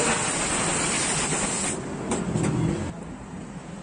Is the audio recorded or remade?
recorded